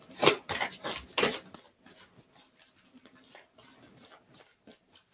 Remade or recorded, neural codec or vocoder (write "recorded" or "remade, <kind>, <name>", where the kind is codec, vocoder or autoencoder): recorded